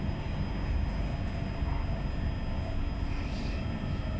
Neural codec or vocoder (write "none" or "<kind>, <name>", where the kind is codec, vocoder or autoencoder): none